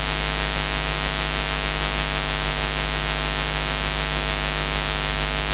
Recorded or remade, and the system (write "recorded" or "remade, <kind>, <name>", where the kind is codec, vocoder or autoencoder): recorded